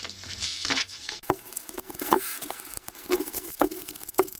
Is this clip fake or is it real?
fake